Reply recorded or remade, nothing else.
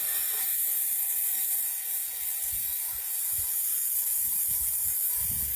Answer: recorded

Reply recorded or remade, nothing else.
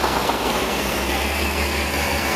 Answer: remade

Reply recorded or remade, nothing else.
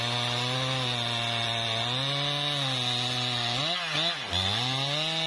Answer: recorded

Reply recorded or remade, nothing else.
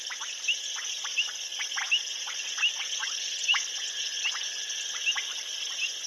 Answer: recorded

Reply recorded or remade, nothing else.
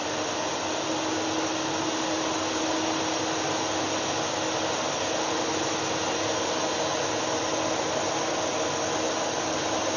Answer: recorded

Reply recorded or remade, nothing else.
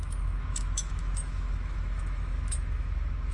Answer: remade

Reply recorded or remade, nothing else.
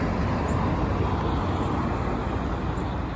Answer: recorded